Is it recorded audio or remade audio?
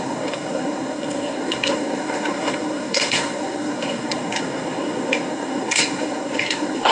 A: remade